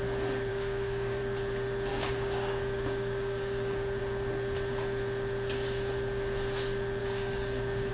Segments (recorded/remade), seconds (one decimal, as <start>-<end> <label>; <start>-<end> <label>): 0.0-0.5 recorded; 0.5-1.2 remade; 1.2-1.9 recorded; 1.9-4.0 remade; 4.0-7.0 recorded; 7.0-7.9 remade

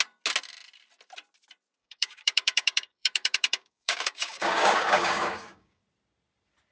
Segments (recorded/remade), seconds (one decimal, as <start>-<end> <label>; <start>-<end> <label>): 0.0-1.8 recorded; 1.8-5.8 remade; 5.8-6.7 recorded

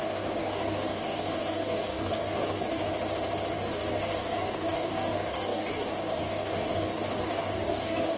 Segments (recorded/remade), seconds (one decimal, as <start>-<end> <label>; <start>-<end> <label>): 0.0-2.9 remade; 2.9-3.5 recorded; 3.5-8.2 remade